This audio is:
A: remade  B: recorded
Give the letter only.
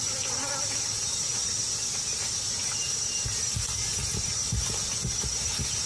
B